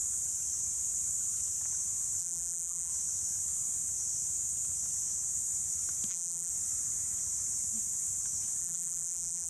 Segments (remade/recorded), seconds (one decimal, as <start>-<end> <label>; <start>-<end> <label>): 0.0-2.2 recorded; 2.2-2.9 remade; 2.9-6.1 recorded; 6.1-6.5 remade; 6.5-8.6 recorded; 8.6-9.5 remade